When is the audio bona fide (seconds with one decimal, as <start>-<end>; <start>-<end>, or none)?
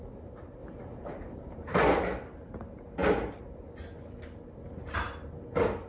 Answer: 0.0-0.6; 1.8-5.9